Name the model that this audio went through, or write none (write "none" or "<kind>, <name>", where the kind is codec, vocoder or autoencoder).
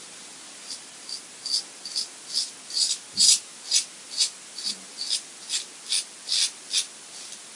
none